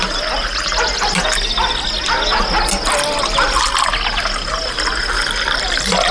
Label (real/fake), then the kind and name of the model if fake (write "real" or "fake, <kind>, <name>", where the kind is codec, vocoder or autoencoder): real